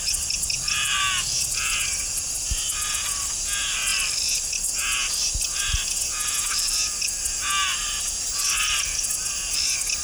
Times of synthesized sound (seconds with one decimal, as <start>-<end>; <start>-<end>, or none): none